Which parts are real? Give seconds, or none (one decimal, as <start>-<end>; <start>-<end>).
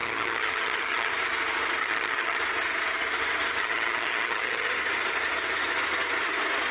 1.1-1.8; 2.4-3.6; 4.7-6.7